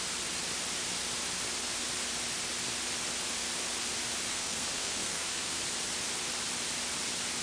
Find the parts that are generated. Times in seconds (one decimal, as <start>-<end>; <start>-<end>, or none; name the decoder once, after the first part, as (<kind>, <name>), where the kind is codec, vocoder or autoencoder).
4.3-5.6 (codec, SNAC)